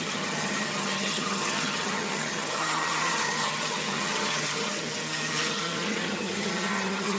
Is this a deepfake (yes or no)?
yes